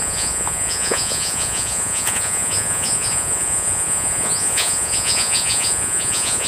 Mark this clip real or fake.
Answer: fake